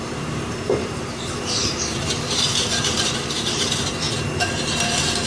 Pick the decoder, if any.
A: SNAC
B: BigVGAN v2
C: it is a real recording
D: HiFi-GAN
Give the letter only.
B